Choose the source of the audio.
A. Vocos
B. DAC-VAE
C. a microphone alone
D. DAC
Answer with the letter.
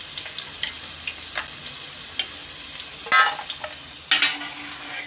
C